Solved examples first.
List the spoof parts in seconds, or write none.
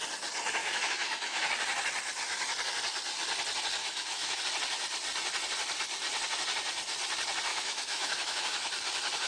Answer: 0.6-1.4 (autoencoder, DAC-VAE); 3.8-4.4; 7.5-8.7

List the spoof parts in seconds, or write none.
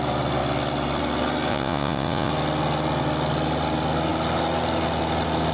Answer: 1.5-2.3 (vocoder, Vocos)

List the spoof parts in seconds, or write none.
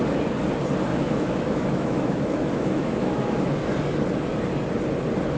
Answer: 0.9-3.7 (autoencoder, DAC-VAE)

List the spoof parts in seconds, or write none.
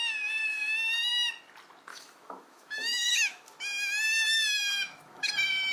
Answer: 0.5-1.3 (autoencoder, DAC-VAE); 1.9-5.3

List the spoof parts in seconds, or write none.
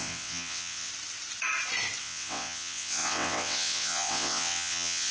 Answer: 0.0-0.9 (vocoder, WaveNeXt); 2.0-5.1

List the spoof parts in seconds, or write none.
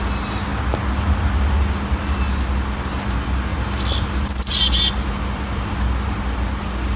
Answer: 3.5-4.9 (vocoder, BigVGAN v2)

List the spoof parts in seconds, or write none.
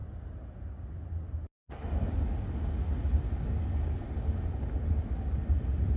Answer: none